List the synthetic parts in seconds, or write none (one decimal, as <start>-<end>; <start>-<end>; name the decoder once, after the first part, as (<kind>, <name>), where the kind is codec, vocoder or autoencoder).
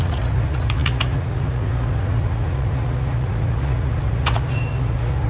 0.0-5.3 (vocoder, Vocos)